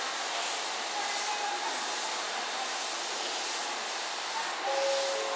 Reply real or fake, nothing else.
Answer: real